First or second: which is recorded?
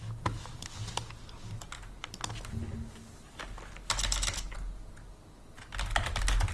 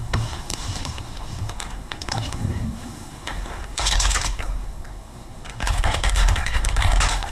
first